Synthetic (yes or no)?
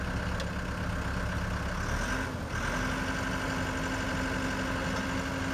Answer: no